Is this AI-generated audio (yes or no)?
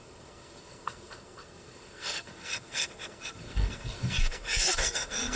yes